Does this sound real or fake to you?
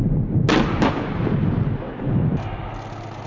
real